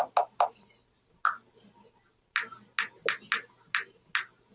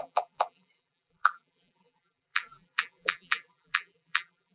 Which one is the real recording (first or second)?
first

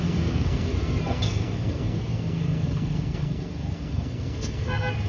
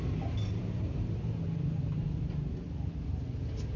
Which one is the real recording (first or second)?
second